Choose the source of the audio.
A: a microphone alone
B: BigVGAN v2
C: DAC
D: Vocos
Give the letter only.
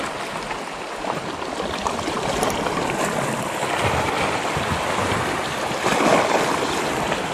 A